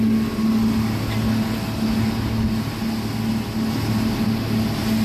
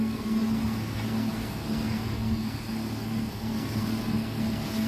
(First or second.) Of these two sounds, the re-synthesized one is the second